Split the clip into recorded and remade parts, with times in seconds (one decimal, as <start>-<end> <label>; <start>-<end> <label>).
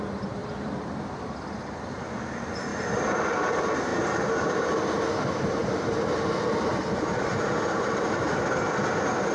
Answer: 0.0-0.4 recorded; 0.4-1.1 remade; 1.1-3.9 recorded; 3.9-4.6 remade; 4.6-9.3 recorded